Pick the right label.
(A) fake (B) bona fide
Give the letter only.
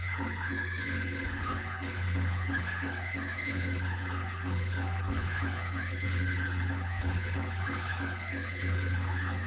A